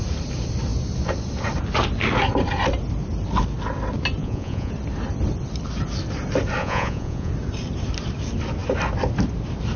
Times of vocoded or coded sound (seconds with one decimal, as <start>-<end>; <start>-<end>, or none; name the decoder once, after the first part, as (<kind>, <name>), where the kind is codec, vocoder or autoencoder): 4.2-4.7 (vocoder, Vocos); 6.6-7.3